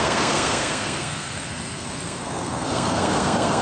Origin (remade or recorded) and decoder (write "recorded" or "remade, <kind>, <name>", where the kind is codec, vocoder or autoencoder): remade, codec, SNAC